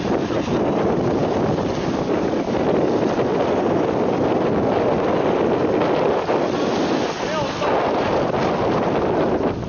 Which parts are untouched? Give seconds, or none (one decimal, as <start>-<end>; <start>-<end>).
0.0-9.7

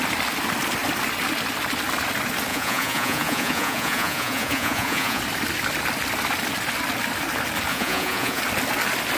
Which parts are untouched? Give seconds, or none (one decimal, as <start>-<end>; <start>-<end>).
0.0-2.5; 5.2-7.7; 8.4-9.2

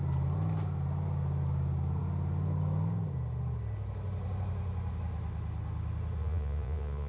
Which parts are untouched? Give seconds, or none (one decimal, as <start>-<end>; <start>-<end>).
0.0-6.2

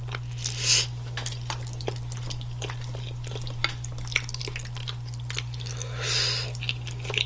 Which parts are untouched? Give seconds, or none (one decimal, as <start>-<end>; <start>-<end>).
0.0-7.3

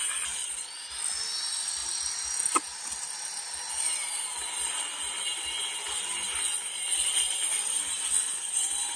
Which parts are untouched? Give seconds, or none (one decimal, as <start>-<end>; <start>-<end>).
0.0-0.4; 0.9-9.0

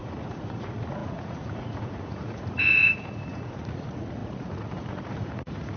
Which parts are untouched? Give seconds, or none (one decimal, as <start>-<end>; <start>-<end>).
none

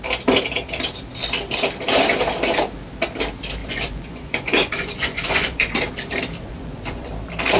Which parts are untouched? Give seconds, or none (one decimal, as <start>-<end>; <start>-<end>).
0.0-3.6; 5.9-6.4; 7.1-7.6

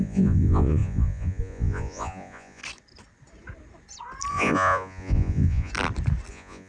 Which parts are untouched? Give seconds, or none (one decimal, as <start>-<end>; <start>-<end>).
2.6-4.3; 5.7-6.3